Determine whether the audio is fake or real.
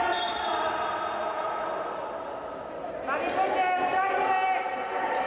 real